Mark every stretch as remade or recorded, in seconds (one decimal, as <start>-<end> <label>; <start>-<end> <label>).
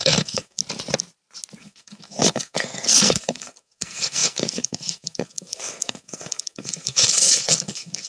0.0-0.6 remade; 0.6-1.6 recorded; 1.6-8.1 remade